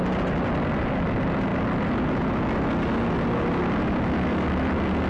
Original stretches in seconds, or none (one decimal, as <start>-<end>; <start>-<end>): 0.0-5.1

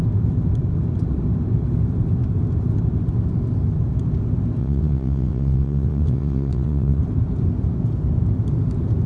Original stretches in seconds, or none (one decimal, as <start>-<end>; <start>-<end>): 0.0-4.6; 7.0-9.1

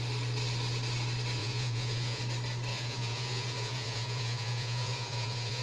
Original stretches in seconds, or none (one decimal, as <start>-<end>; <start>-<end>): 0.0-1.4; 2.2-2.7

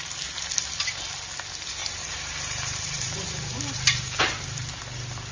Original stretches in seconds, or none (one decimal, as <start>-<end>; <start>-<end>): 0.0-1.8; 4.8-5.3

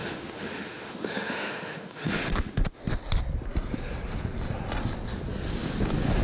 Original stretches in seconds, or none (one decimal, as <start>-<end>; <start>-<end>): 3.0-6.2

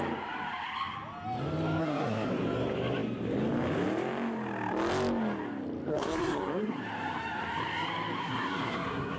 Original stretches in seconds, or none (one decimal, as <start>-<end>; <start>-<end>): 0.0-1.8; 2.3-5.9; 6.8-8.2

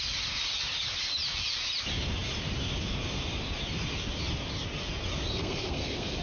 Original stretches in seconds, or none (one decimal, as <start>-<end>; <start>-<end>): 0.0-5.2